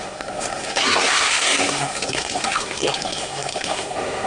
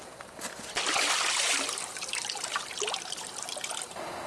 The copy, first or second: first